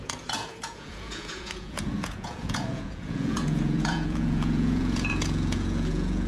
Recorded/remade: remade